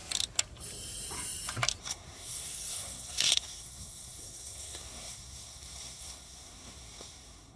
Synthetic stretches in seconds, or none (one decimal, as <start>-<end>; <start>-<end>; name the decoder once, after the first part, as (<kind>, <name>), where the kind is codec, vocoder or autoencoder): 1.8-7.6 (codec, SNAC)